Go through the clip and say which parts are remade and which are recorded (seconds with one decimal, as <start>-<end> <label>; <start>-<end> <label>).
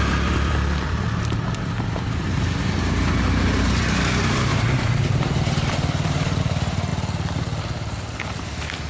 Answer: 0.0-6.9 remade; 6.9-7.6 recorded; 7.6-8.9 remade